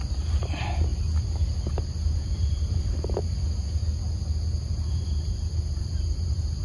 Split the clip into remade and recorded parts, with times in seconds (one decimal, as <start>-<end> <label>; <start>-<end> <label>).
0.0-0.9 remade; 0.9-1.7 recorded; 1.7-3.8 remade; 3.8-4.6 recorded; 4.6-6.6 remade